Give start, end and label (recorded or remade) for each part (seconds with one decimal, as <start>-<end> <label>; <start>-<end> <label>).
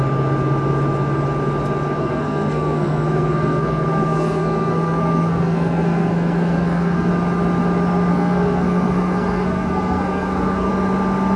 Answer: 0.0-2.0 recorded; 2.0-7.1 remade; 7.1-8.1 recorded; 8.1-10.7 remade; 10.7-11.4 recorded